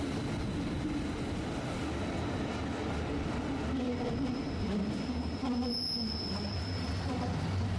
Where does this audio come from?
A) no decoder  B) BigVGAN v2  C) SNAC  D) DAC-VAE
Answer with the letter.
A